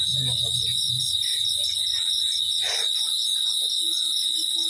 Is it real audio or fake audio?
real